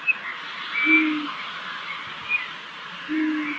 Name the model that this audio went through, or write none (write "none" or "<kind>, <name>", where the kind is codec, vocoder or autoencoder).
none